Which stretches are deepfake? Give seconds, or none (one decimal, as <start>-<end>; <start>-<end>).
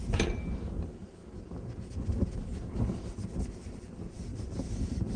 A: none